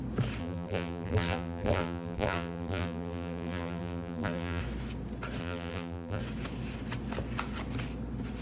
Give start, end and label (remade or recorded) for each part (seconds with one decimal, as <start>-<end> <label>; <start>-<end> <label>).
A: 0.0-0.4 recorded; 0.4-4.6 remade; 4.6-5.4 recorded; 5.4-6.2 remade; 6.2-8.4 recorded